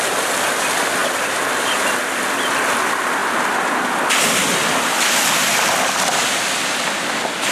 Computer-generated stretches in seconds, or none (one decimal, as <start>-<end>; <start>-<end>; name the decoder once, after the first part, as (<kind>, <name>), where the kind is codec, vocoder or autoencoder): none